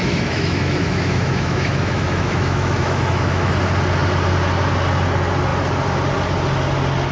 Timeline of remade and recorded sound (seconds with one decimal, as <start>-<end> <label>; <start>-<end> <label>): 0.0-3.5 remade; 3.5-7.1 recorded